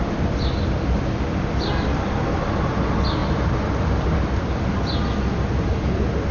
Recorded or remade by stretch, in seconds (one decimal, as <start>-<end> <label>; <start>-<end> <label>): 0.0-6.3 recorded